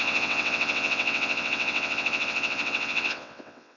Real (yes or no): no